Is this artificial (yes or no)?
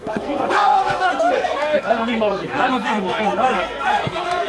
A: yes